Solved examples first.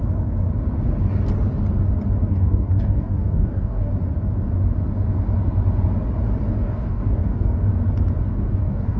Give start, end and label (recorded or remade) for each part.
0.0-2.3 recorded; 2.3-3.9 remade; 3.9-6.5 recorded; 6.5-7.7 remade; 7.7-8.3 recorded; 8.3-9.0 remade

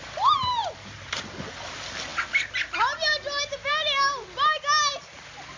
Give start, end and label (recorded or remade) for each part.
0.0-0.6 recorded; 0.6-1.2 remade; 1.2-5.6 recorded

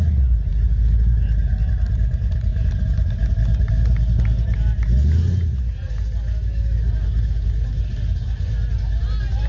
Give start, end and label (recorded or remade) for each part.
0.0-9.5 recorded